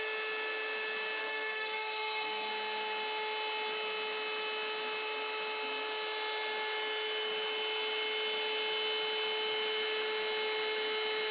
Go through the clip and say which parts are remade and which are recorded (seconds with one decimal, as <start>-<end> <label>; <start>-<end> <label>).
0.0-1.2 recorded; 1.2-2.5 remade; 2.5-11.3 recorded